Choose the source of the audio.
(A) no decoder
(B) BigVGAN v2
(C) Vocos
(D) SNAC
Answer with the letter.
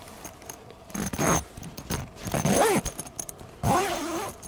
B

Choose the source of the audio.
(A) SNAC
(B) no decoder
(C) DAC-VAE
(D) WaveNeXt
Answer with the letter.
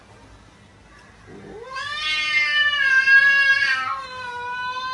B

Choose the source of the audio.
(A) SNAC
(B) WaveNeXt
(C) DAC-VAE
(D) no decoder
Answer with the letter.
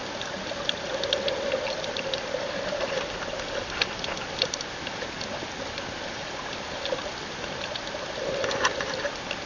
D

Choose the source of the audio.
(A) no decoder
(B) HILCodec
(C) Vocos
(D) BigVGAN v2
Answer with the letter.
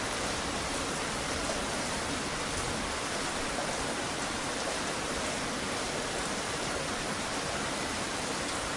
D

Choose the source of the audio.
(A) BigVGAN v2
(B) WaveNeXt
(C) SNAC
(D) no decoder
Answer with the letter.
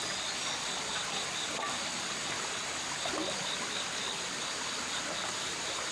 D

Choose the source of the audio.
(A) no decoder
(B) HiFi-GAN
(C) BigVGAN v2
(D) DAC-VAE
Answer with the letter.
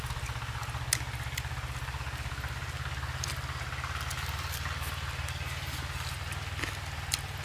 A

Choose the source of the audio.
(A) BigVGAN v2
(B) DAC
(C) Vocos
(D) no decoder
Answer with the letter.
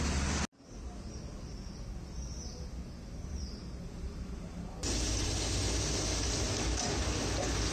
D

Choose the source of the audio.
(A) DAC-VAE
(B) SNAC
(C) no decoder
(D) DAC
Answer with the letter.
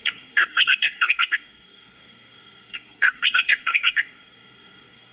B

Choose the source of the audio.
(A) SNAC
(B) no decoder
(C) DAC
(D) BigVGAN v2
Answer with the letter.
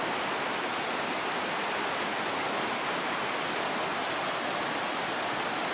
B